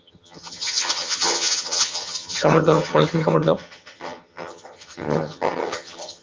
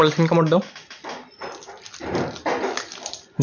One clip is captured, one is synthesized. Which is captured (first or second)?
second